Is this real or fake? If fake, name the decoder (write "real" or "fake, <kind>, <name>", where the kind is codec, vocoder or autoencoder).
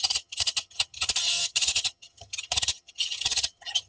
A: fake, vocoder, HiFi-GAN